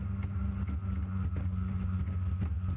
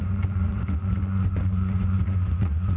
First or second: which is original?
first